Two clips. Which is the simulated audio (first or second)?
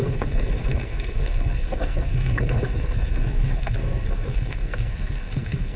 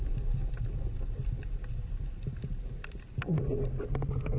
first